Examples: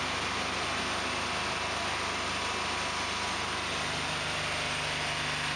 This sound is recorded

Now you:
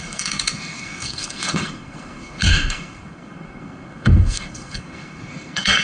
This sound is remade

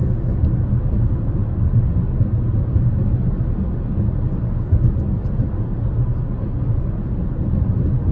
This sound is recorded